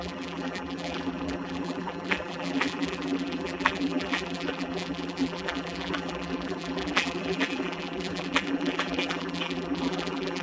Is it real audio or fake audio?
fake